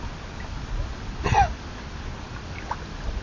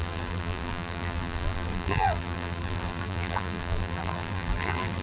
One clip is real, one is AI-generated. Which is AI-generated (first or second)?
second